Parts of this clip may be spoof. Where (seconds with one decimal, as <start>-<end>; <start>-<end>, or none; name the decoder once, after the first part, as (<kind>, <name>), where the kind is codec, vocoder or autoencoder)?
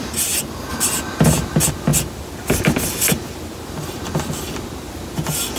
none